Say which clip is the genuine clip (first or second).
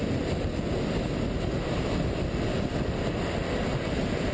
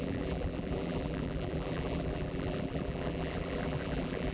first